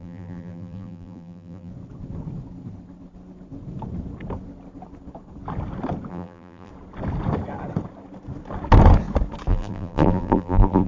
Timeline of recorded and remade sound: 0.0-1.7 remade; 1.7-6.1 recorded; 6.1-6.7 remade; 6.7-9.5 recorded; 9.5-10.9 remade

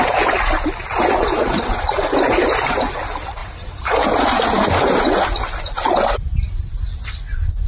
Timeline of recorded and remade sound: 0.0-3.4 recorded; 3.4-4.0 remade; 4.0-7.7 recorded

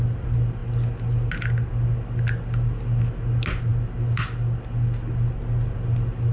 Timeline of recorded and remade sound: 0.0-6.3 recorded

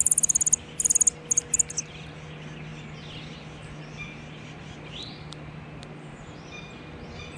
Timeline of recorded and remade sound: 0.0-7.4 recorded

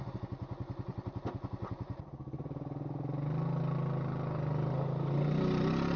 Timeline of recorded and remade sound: 0.0-0.9 recorded; 0.9-2.3 remade; 2.3-6.0 recorded

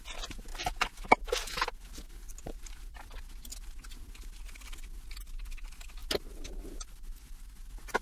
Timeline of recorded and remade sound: 0.0-0.5 recorded; 0.5-1.2 remade; 1.2-2.3 recorded; 2.3-2.8 remade; 2.8-8.0 recorded